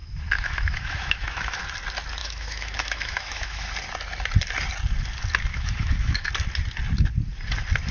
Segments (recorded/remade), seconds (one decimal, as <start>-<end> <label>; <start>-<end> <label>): 0.0-1.6 remade; 1.6-2.2 recorded; 2.2-3.7 remade; 3.7-5.5 recorded; 5.5-6.3 remade; 6.3-7.9 recorded